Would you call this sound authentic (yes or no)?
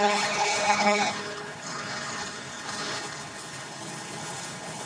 no